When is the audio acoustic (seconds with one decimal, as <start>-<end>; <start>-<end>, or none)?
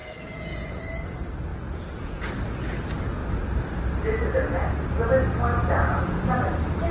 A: 0.8-1.5; 2.3-5.5; 6.3-6.9